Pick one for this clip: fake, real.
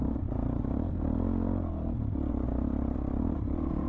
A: real